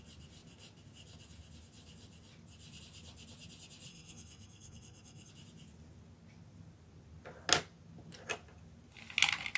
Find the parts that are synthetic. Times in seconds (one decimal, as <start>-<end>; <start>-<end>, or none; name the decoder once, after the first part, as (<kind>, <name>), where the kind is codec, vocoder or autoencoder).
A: 3.9-5.3 (codec, SNAC)